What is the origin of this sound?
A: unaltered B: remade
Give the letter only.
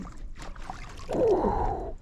A